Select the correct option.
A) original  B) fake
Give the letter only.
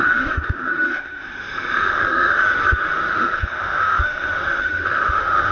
B